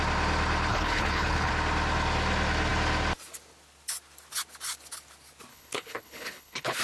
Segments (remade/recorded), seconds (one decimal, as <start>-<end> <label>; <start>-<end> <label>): 0.0-0.7 recorded; 0.7-1.5 remade; 1.5-5.5 recorded; 5.5-6.8 remade